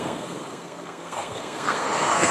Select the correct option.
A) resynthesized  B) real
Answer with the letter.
A